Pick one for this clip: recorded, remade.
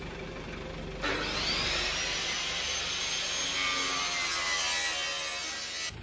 recorded